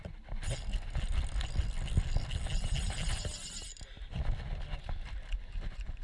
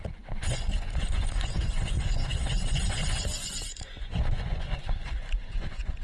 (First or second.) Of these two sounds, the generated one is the second